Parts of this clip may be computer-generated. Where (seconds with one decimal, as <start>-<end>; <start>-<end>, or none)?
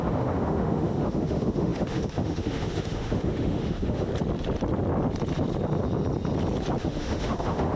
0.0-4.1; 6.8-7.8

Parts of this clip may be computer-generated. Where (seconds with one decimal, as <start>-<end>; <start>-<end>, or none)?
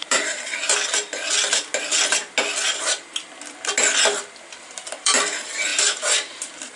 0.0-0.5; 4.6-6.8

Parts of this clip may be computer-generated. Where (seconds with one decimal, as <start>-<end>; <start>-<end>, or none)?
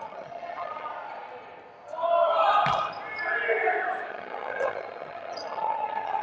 0.0-0.9; 4.1-6.2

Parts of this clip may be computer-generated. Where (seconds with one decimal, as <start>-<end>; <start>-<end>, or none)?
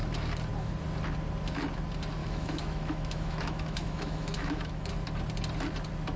2.2-4.9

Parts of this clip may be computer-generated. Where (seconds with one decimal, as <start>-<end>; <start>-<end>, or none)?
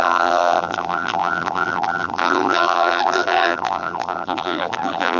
0.0-5.2